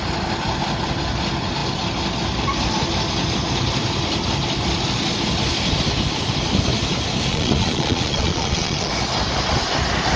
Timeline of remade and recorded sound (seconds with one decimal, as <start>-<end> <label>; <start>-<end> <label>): 0.0-7.3 recorded; 7.3-8.9 remade; 8.9-10.2 recorded